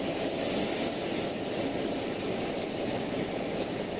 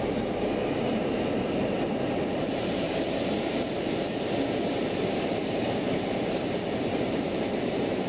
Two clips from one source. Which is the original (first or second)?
first